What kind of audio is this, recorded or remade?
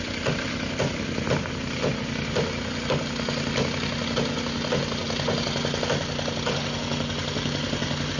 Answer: recorded